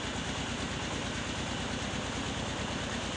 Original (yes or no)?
yes